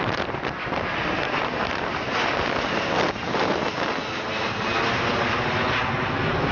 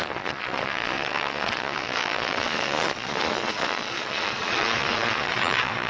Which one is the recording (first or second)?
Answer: first